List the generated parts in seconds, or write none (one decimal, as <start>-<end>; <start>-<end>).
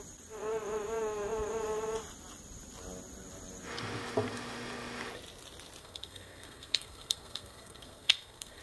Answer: 5.8-8.6